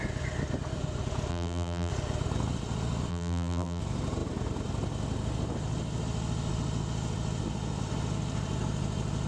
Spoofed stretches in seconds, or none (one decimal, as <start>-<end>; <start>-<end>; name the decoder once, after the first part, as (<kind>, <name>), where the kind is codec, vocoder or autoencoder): 1.3-1.9 (vocoder, BigVGAN v2); 3.1-3.8

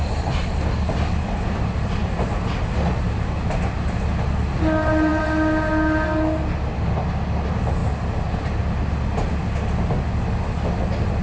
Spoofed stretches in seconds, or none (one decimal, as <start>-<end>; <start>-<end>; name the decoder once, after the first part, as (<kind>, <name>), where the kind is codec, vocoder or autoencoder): 2.0-2.5 (vocoder, BigVGAN v2)